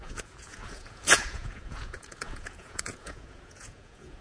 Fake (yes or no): yes